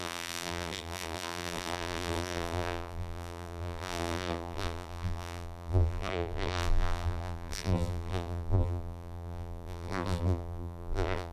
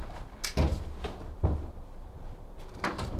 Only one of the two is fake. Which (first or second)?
first